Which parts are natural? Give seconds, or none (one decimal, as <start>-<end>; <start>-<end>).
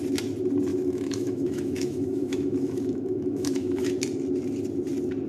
0.0-0.7; 3.9-5.3